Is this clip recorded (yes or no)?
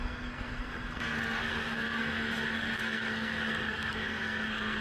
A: no